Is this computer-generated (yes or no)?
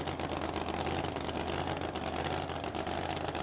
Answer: no